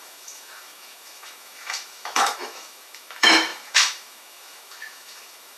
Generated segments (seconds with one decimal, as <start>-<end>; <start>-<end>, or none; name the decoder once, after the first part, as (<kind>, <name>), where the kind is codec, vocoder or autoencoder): 0.0-5.6 (autoencoder, DAC-VAE)